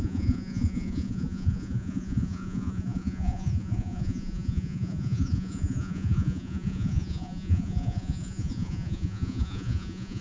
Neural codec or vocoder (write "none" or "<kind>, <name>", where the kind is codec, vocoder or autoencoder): vocoder, Vocos